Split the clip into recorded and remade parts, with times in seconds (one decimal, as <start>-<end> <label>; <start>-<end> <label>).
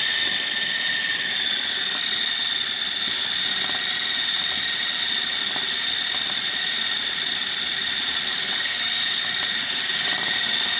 0.0-8.3 recorded; 8.3-9.3 remade; 9.3-10.8 recorded